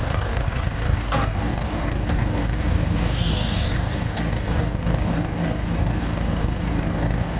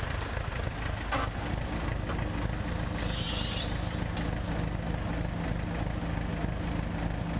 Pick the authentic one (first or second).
second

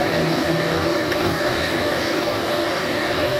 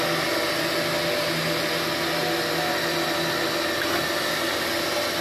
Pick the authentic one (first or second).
second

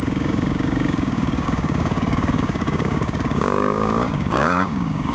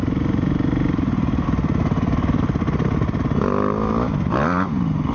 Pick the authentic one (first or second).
second